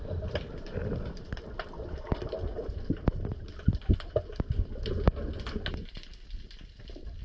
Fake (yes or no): no